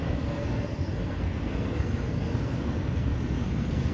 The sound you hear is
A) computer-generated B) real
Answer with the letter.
A